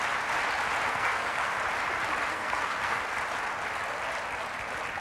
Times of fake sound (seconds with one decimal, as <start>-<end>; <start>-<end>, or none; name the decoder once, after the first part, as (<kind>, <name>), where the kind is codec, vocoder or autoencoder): 0.9-1.5 (codec, SNAC); 2.3-3.0